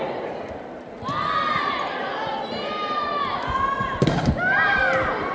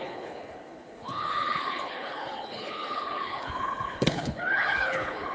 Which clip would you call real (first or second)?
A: first